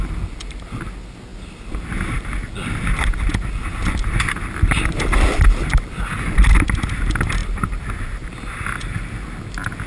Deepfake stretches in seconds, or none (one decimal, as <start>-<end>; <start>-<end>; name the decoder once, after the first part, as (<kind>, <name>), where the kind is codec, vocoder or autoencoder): none